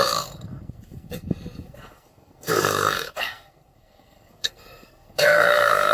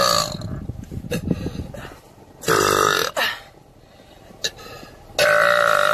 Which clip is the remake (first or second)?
first